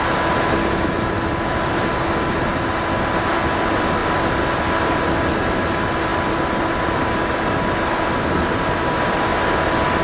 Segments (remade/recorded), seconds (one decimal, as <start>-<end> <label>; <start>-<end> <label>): 0.0-10.0 recorded